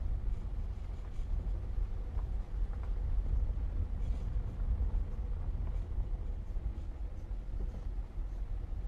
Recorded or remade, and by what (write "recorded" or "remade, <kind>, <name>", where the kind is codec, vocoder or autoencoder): recorded